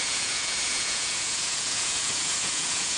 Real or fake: fake